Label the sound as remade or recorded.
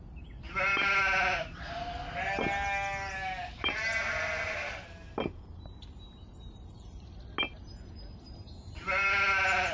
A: recorded